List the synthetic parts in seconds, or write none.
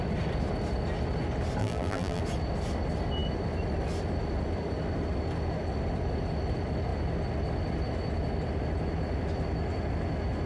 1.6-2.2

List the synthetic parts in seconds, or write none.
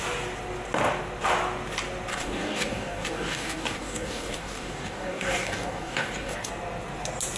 2.1-6.5